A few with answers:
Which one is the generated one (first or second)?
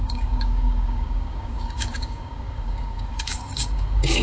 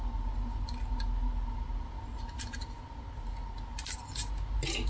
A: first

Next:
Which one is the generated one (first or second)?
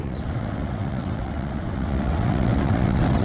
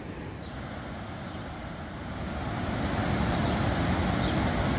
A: first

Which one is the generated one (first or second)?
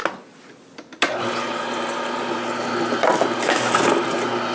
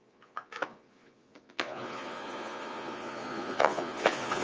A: second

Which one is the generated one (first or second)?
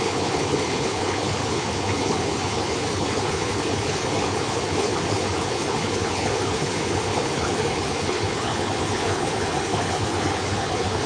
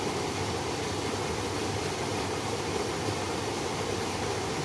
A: first